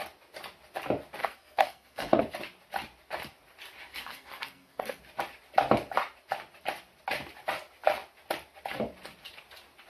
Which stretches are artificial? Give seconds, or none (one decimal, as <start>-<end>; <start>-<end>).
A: 1.2-2.2; 3.9-5.0